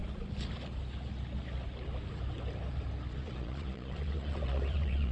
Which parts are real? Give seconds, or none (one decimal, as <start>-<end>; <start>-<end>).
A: 0.0-3.1